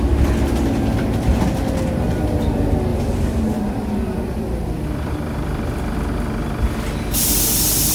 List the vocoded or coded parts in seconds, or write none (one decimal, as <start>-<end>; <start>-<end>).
2.9-6.1